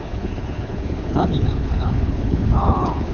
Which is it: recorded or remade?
remade